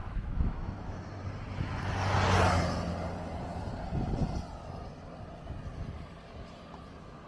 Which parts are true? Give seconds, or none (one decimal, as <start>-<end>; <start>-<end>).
1.0-7.3